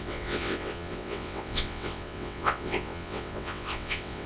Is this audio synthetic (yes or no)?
yes